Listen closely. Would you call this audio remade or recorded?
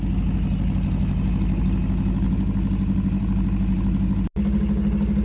recorded